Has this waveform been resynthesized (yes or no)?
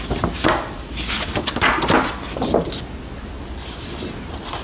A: no